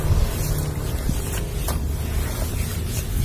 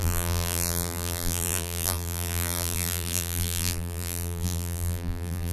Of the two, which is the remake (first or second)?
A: second